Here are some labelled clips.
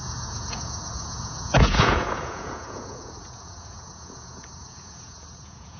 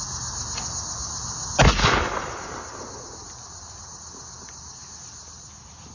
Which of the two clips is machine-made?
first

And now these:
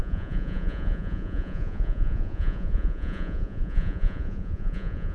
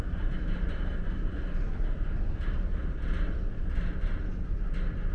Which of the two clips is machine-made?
first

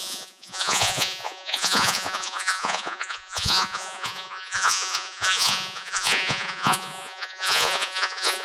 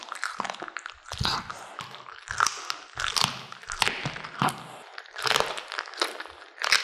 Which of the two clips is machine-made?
first